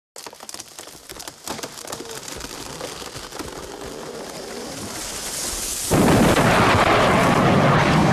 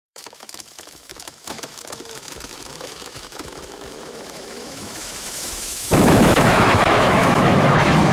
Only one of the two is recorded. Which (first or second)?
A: first